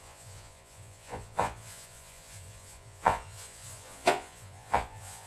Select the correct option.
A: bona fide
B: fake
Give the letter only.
B